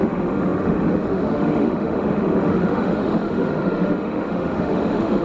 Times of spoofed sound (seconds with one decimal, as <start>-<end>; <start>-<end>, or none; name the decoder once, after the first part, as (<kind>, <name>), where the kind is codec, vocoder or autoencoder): 0.0-5.2 (autoencoder, DAC-VAE)

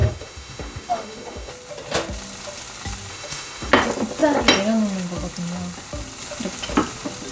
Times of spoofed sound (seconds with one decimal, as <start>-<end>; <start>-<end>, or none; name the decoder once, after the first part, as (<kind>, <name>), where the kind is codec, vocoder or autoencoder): 0.0-1.5 (autoencoder, DAC-VAE); 3.1-3.7

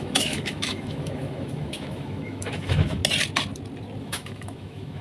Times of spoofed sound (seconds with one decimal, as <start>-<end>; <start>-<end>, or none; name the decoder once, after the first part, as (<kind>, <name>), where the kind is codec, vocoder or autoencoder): 0.0-3.0 (autoencoder, DAC-VAE); 4.0-5.0

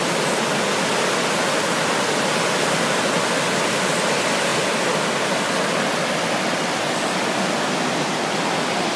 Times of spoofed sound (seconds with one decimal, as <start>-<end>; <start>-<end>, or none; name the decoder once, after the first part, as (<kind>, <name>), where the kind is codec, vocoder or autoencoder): none

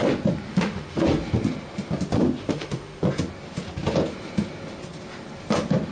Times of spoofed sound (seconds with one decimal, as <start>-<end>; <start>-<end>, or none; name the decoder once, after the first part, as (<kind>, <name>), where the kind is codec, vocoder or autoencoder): 0.5-1.0 (autoencoder, DAC-VAE); 2.4-3.0

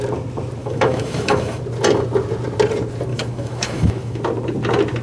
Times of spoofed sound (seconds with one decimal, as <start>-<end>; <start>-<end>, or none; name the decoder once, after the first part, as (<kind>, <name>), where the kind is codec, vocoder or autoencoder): 0.6-1.6 (autoencoder, DAC-VAE); 3.1-4.2

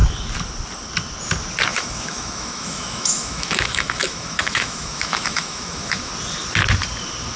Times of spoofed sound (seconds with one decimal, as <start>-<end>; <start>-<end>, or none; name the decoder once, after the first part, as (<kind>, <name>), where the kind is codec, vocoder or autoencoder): 1.7-6.1 (autoencoder, DAC-VAE)